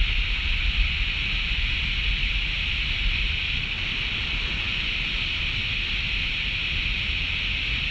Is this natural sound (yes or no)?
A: yes